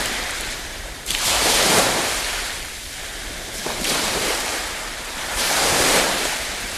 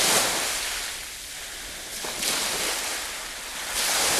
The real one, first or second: second